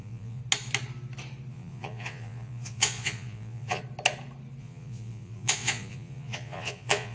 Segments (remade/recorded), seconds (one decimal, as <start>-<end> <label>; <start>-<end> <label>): 0.0-0.4 remade; 0.4-1.5 recorded; 1.5-3.8 remade; 3.8-4.6 recorded; 4.6-7.1 remade